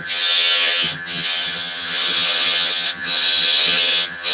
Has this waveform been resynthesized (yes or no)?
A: yes